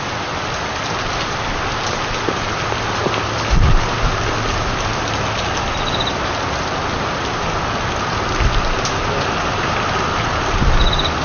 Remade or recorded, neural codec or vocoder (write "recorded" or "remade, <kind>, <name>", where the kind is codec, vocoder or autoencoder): recorded